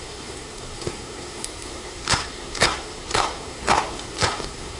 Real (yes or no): no